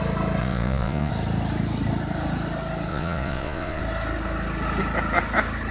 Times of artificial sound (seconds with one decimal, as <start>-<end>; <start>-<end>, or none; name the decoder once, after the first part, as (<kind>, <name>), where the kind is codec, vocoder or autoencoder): 0.4-1.1 (vocoder, Vocos); 2.9-3.8